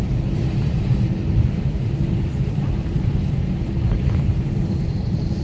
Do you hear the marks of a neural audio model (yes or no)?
yes